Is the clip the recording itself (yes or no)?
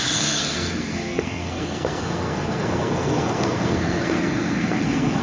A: no